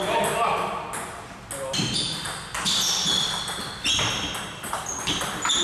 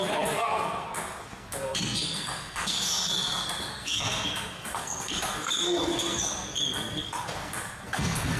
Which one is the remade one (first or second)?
second